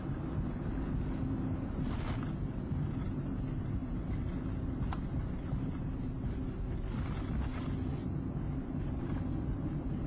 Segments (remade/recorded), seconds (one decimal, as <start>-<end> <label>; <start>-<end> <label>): 0.0-10.1 recorded